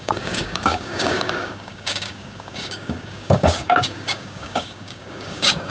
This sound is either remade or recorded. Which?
remade